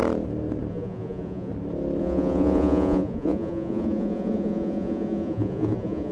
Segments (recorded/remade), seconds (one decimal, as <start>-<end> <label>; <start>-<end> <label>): 0.0-0.7 recorded; 0.7-1.5 remade; 1.5-2.0 recorded; 2.0-6.1 remade

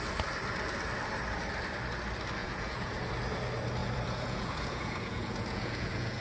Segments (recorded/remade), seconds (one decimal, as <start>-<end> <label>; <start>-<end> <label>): 0.0-2.4 recorded; 2.4-3.1 remade; 3.1-3.8 recorded; 3.8-6.2 remade

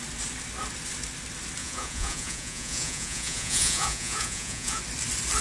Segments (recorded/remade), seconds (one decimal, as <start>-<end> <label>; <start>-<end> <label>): 0.0-1.6 recorded; 1.6-4.8 remade; 4.8-5.4 recorded

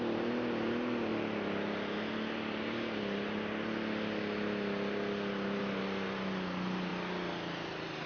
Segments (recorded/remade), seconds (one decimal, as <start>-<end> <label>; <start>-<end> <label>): 0.0-8.1 recorded

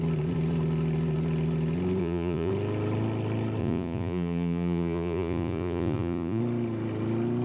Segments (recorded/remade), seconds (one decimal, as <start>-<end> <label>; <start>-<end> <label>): 0.0-2.0 recorded; 2.0-2.5 remade; 2.5-3.6 recorded; 3.6-6.4 remade; 6.4-7.4 recorded

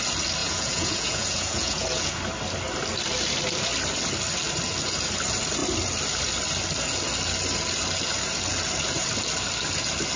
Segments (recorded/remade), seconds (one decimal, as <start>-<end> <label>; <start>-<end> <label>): 0.0-0.4 recorded; 0.4-2.2 remade; 2.2-10.2 recorded

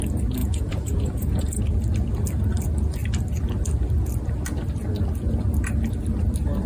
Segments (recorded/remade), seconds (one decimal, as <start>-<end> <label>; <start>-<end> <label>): 0.0-0.4 recorded; 0.4-1.6 remade; 1.6-6.7 recorded